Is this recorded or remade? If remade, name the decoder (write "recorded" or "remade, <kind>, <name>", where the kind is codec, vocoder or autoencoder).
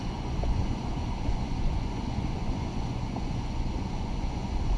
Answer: remade, vocoder, Vocos